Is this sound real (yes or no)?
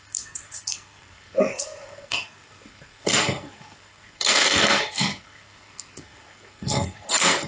no